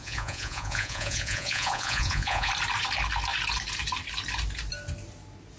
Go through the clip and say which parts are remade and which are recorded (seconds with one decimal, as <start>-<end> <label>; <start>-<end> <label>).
0.0-2.5 remade; 2.5-5.6 recorded